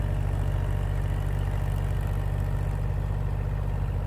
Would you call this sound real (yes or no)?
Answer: yes